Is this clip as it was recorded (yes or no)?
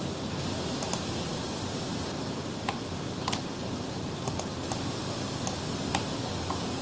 no